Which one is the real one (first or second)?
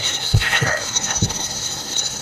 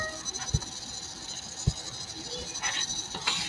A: second